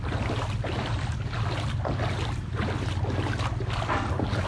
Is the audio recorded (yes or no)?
yes